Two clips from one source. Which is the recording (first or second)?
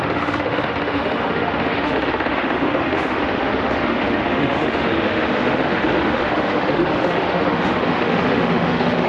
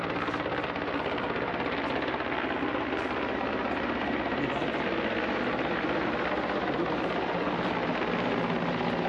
second